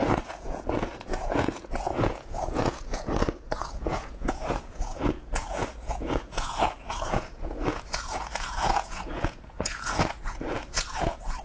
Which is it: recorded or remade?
remade